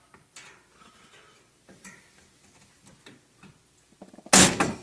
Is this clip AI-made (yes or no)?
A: no